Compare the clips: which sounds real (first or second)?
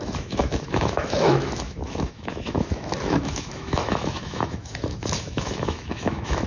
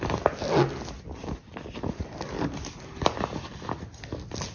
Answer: second